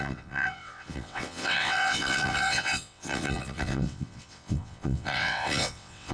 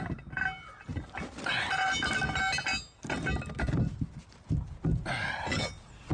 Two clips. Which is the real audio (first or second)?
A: second